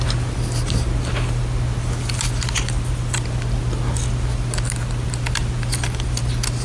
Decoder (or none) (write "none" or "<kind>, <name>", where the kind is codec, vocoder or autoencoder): none